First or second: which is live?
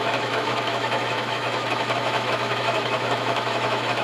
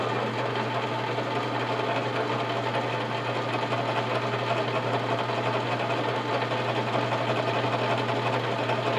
second